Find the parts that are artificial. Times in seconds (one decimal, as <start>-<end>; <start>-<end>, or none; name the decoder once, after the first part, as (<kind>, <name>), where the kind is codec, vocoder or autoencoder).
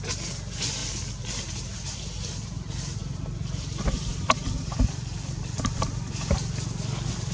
0.8-1.4 (vocoder, BigVGAN v2); 3.0-5.4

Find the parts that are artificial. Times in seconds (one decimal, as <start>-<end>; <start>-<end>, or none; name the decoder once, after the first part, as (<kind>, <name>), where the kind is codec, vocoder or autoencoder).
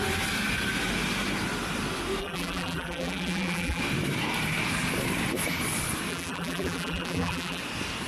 2.2-3.8 (vocoder, BigVGAN v2); 6.1-7.6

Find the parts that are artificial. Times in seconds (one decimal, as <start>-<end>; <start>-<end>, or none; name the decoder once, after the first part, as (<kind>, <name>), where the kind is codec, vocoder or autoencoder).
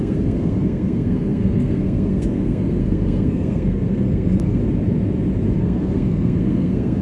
0.0-4.6 (codec, SNAC); 5.6-7.0